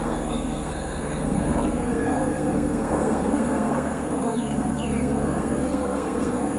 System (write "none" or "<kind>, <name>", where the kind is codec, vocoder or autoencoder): codec, SNAC